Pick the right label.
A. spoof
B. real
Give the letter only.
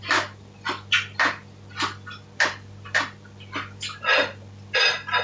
B